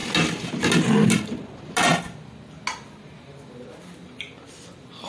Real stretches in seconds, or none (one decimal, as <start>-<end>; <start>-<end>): 0.0-5.1